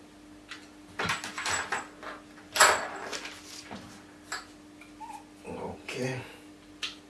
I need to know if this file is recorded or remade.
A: recorded